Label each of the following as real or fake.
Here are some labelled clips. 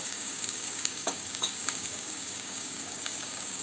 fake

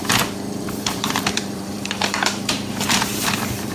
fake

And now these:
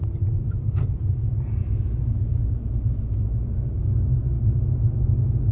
real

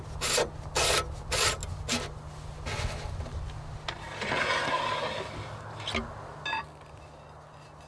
real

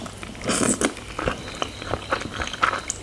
real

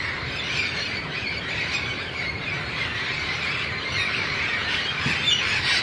fake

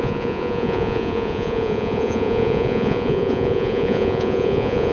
fake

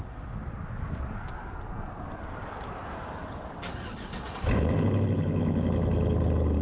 real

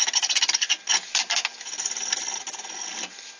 real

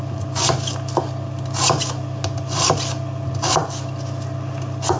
real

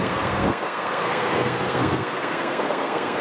fake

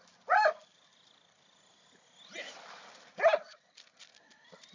real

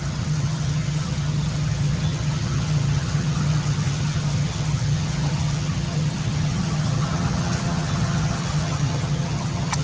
fake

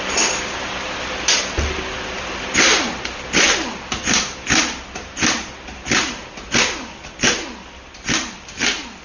real